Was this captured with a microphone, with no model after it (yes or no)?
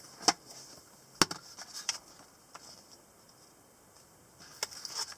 yes